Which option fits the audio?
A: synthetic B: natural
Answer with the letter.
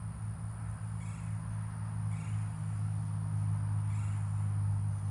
B